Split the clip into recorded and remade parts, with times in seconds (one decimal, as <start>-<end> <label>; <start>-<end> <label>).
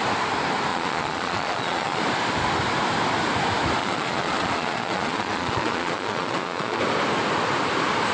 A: 0.0-0.7 recorded; 0.7-2.0 remade; 2.0-3.8 recorded; 3.8-6.8 remade; 6.8-8.1 recorded